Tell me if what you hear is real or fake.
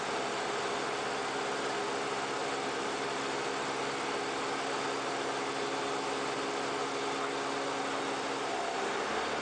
real